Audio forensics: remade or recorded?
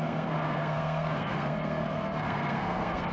remade